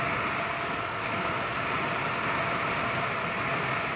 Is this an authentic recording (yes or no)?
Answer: yes